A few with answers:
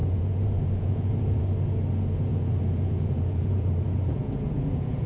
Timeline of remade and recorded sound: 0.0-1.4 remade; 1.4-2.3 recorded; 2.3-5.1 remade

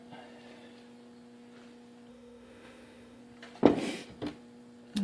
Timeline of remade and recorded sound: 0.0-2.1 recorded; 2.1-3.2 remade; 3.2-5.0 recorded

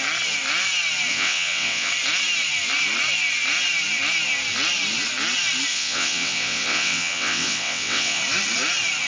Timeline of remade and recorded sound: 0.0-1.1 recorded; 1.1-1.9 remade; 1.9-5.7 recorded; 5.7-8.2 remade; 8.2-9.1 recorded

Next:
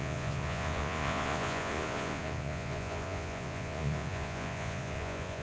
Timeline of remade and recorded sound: 0.0-5.4 remade

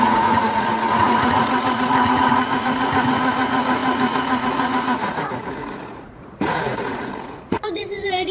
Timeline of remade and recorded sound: 0.0-8.3 remade

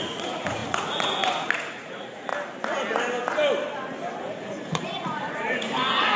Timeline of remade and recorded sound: 0.0-2.3 remade; 2.3-4.2 recorded; 4.2-6.2 remade